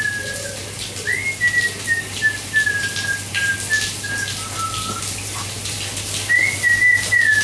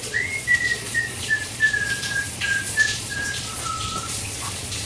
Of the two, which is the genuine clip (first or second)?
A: first